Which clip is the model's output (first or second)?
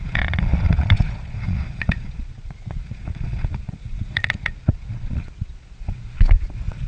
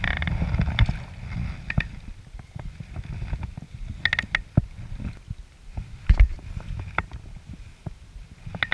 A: first